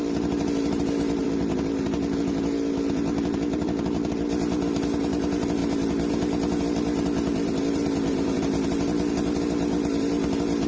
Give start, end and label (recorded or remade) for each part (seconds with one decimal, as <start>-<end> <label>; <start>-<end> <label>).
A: 0.0-10.7 remade